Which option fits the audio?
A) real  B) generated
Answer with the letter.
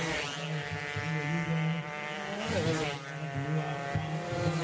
A